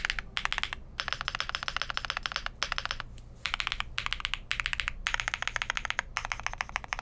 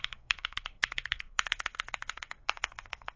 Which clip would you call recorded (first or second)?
first